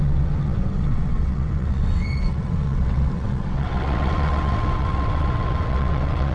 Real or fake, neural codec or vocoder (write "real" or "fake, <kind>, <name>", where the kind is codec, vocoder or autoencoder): fake, vocoder, WaveNeXt